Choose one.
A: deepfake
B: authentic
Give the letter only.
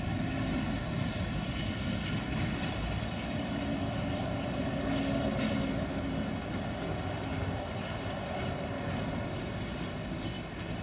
B